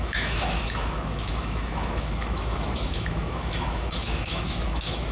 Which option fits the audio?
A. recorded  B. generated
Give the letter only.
B